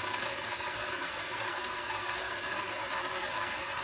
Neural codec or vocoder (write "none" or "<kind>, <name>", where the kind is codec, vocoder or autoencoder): codec, SNAC